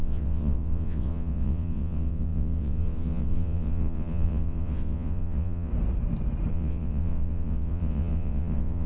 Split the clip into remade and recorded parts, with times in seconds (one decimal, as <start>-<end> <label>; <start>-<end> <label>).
0.0-5.7 remade; 5.7-6.5 recorded; 6.5-8.9 remade